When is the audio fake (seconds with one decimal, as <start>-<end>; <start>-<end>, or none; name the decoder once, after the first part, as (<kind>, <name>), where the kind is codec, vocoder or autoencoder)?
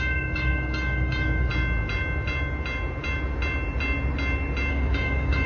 0.0-1.5 (codec, DAC); 4.7-5.5